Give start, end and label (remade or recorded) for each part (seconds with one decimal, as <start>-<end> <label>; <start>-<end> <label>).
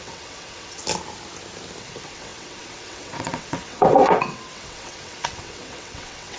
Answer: 0.0-0.8 remade; 0.8-1.8 recorded; 1.8-6.4 remade